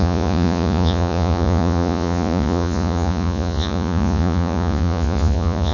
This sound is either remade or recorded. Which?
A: remade